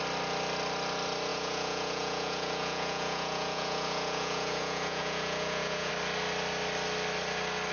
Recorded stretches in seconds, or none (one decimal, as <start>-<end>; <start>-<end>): 0.0-1.3; 5.9-7.7